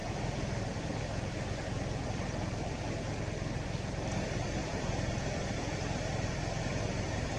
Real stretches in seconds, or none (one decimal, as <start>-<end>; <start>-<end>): 1.6-4.6; 5.6-7.4